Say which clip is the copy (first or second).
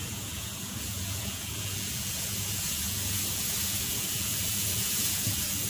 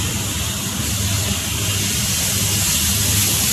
first